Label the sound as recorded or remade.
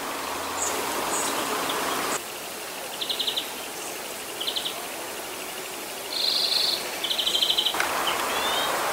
recorded